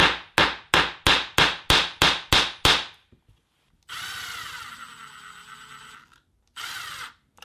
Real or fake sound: real